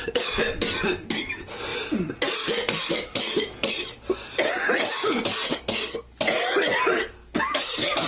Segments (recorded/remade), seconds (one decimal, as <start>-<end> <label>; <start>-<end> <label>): 0.0-1.7 recorded; 1.7-5.6 remade; 5.6-8.1 recorded